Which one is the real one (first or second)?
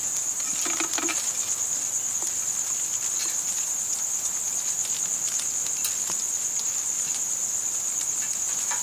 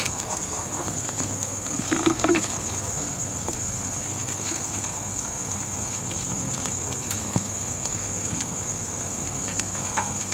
first